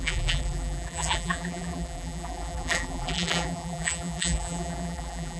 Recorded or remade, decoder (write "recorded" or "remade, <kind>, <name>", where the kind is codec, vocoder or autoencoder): remade, vocoder, BigVGAN v2